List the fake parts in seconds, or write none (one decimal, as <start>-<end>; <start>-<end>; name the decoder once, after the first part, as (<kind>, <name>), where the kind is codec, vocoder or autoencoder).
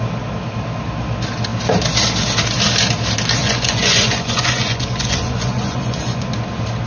3.4-6.3 (vocoder, Vocos)